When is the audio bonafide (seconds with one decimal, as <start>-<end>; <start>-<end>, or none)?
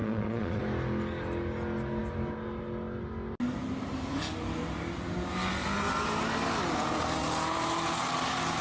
0.6-8.6